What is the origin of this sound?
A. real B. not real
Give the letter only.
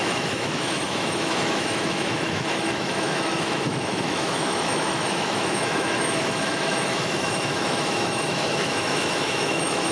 B